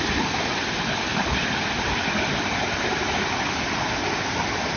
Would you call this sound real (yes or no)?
yes